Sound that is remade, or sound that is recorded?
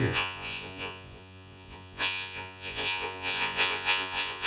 remade